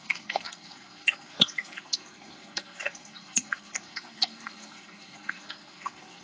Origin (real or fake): fake